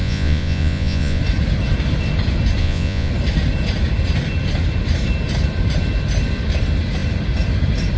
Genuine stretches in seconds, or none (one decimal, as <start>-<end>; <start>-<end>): 1.2-2.6; 3.1-8.0